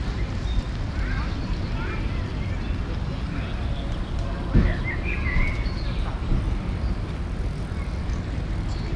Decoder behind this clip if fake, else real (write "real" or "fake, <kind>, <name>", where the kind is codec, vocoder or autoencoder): real